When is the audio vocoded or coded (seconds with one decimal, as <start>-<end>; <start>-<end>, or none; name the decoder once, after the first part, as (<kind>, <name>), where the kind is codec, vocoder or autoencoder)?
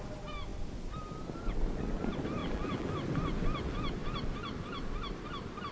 2.4-2.9 (vocoder, BigVGAN v2)